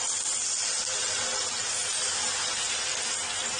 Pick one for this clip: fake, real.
real